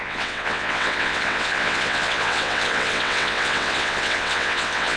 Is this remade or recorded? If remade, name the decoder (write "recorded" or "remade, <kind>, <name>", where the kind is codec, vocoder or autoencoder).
remade, vocoder, WaveNeXt